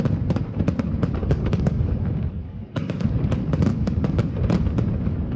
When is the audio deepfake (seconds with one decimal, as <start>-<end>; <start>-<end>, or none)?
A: 1.2-3.1; 3.7-4.3